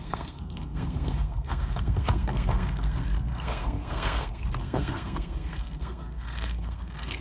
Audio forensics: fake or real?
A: fake